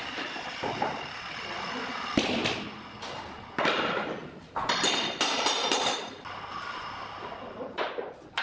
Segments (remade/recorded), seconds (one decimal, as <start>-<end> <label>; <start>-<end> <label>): 0.0-8.4 recorded